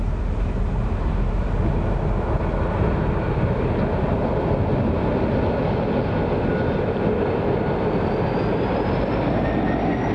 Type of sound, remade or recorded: recorded